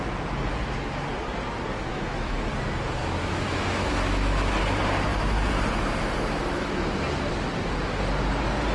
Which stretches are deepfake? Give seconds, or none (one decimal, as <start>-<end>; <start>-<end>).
1.9-2.5; 3.0-4.6